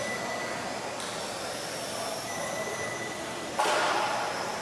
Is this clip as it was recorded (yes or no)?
yes